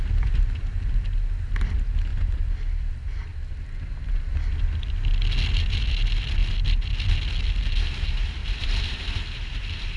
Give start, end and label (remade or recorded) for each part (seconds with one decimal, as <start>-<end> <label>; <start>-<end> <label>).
0.0-2.1 recorded; 2.1-2.9 remade; 2.9-8.4 recorded; 8.4-10.0 remade